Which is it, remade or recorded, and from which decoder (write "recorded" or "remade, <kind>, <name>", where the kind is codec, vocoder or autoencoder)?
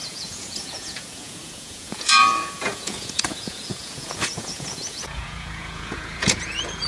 remade, vocoder, Vocos